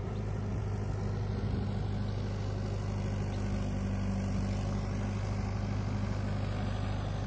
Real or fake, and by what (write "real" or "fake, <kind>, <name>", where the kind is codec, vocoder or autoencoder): real